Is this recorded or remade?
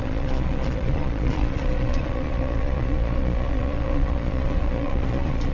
remade